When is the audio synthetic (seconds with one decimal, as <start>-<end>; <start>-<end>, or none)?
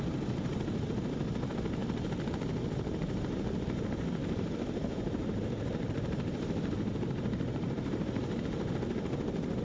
1.8-2.3; 4.2-8.4